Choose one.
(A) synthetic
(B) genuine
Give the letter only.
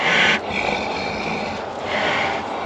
B